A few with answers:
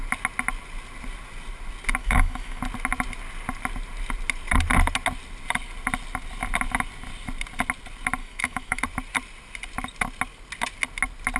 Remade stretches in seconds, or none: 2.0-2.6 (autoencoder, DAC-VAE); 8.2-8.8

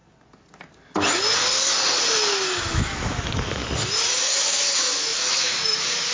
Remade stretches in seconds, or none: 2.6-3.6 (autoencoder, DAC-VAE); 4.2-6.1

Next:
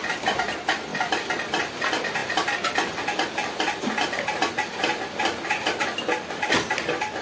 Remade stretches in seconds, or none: 0.9-1.7 (vocoder, BigVGAN v2); 2.2-6.5

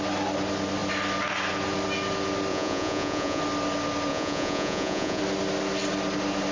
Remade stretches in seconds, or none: 2.5-3.4 (vocoder, Vocos); 4.1-5.2